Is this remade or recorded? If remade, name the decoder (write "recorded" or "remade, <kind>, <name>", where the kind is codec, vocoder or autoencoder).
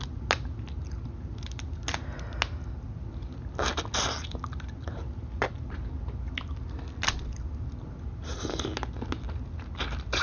recorded